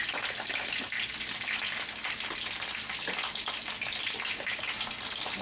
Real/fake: real